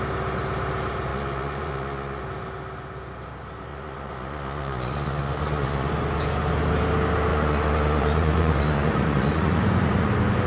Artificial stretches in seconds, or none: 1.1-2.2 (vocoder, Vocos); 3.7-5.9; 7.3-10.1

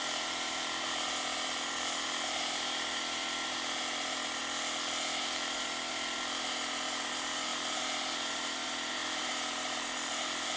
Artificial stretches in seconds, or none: 0.0-4.4 (vocoder, BigVGAN v2); 5.2-10.6

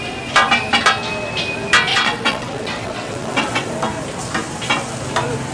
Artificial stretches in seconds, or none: 1.9-3.7 (vocoder, WaveNeXt)

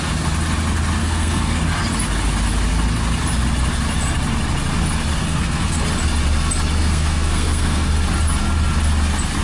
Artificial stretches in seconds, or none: 1.0-1.6 (codec, SNAC); 5.2-5.8; 6.8-7.9

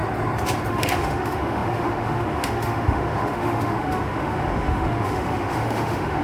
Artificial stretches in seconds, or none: 0.7-6.2 (autoencoder, DAC-VAE)